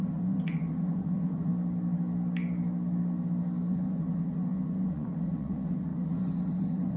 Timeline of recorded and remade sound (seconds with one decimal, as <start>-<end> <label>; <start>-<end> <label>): 0.0-1.5 remade; 1.5-3.7 recorded; 3.7-7.0 remade